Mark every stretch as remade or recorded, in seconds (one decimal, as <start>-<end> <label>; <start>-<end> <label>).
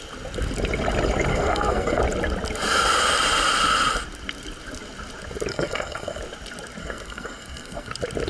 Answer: 0.0-1.3 recorded; 1.3-2.0 remade; 2.0-5.5 recorded; 5.5-6.2 remade; 6.2-6.8 recorded; 6.8-7.9 remade; 7.9-8.3 recorded